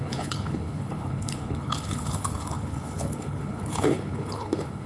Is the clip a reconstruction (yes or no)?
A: yes